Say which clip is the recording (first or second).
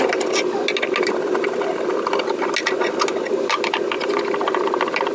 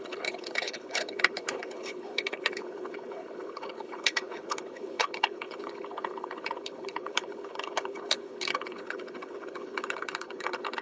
first